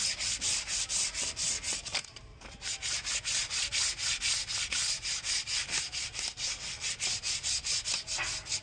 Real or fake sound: real